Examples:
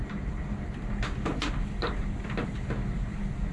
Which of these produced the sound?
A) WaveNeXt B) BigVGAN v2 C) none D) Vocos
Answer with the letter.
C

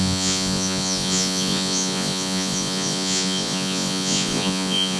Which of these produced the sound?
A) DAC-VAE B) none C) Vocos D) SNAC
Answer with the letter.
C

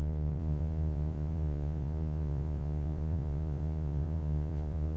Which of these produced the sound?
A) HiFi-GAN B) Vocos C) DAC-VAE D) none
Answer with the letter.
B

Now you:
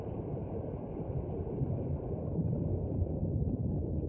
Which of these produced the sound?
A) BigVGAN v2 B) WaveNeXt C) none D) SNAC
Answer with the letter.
A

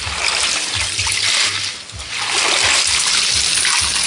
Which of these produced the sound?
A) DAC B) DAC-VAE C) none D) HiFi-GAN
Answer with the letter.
C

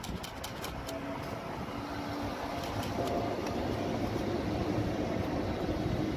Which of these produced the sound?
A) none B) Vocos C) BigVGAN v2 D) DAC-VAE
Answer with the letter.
A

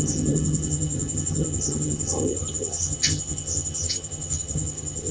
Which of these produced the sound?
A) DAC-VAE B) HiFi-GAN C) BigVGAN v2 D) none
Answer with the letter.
B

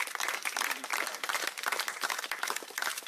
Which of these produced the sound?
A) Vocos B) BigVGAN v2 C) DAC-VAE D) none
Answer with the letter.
B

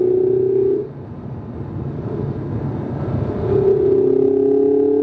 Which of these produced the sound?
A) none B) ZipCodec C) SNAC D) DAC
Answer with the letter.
A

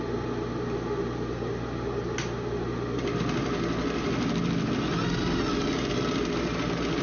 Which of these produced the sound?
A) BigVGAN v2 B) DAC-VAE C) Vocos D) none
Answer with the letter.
D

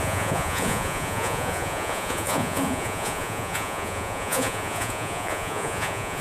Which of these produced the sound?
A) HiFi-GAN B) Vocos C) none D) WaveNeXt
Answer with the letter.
B